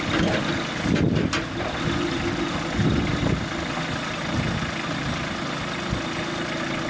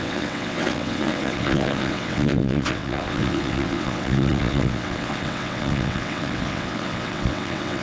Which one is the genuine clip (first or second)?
first